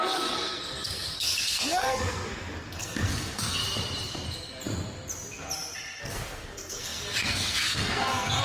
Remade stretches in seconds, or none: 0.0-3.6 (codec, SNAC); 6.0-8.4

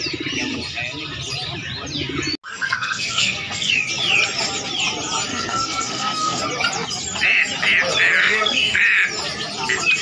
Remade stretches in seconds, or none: 2.5-3.7 (codec, SNAC); 5.3-6.4; 8.2-8.8